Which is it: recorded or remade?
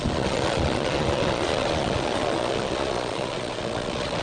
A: remade